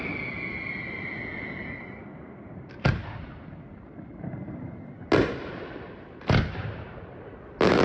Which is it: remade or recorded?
recorded